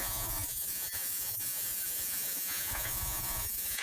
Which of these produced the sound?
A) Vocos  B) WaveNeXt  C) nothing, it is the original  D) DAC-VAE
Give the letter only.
A